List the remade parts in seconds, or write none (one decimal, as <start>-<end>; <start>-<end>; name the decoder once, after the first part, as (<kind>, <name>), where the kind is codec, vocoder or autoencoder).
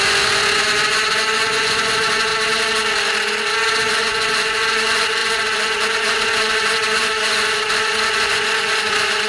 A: 0.0-2.3 (vocoder, Vocos); 3.9-9.3